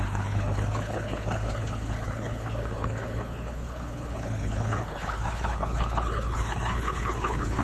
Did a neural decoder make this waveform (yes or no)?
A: yes